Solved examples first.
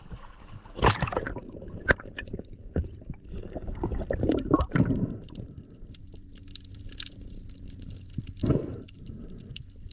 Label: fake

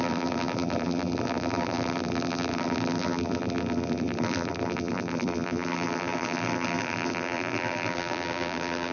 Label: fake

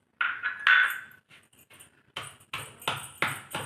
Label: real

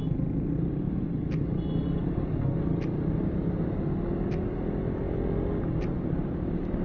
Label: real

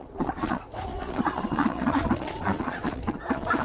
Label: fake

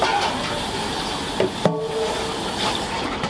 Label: real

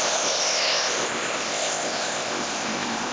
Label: fake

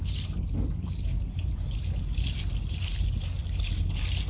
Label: real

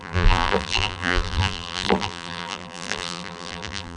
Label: fake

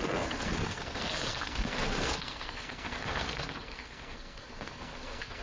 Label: fake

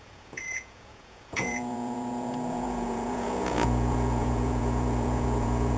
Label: fake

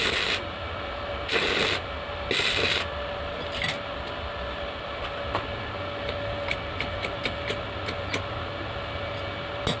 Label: real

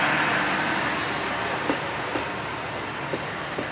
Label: real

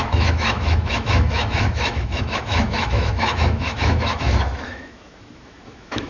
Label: fake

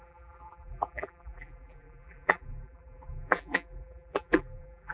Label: fake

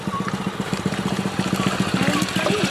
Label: real